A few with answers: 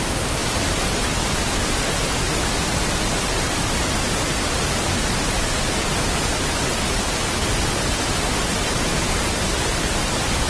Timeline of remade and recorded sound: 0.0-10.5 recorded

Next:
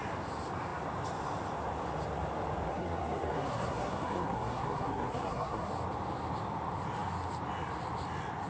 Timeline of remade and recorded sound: 0.0-2.7 recorded; 2.7-5.7 remade; 5.7-8.5 recorded

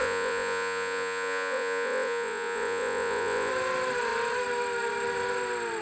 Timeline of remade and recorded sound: 0.0-3.5 remade; 3.5-5.8 recorded